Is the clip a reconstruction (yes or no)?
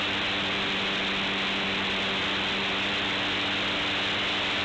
no